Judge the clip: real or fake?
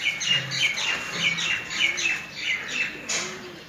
real